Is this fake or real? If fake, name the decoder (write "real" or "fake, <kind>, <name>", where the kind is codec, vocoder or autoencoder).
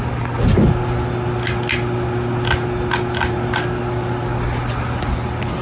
real